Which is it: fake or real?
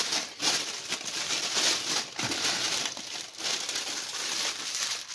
real